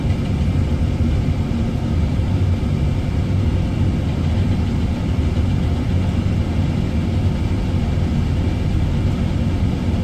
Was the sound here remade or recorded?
recorded